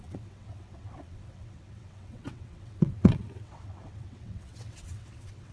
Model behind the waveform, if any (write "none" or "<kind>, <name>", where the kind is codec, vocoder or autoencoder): vocoder, WaveNeXt